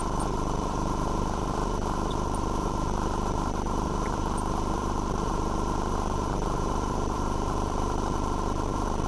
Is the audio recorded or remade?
remade